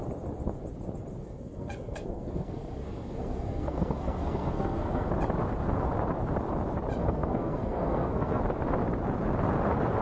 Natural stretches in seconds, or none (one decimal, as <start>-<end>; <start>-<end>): 0.0-1.2; 5.1-7.0; 8.4-10.0